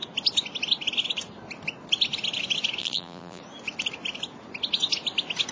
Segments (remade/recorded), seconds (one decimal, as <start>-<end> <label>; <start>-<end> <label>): 0.0-2.8 recorded; 2.8-3.4 remade; 3.4-5.5 recorded